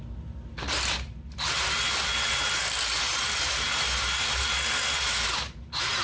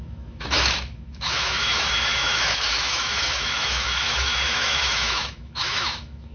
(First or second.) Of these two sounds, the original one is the first